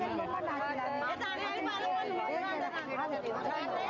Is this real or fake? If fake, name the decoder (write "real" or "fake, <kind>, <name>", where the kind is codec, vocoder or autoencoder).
real